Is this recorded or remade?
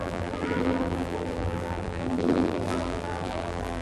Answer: remade